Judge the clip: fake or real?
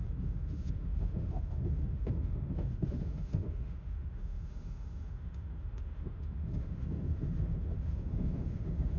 fake